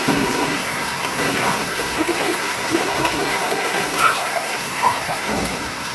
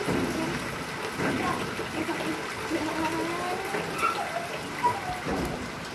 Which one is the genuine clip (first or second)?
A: second